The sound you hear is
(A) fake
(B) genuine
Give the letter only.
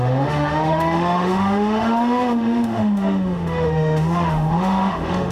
A